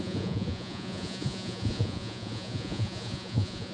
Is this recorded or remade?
remade